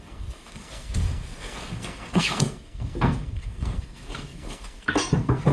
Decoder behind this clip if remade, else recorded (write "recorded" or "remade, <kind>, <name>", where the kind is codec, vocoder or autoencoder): remade, codec, SNAC